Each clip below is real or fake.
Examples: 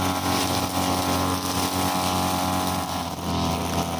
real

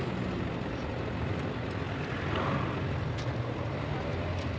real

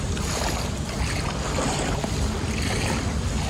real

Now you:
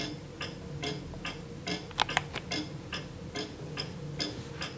real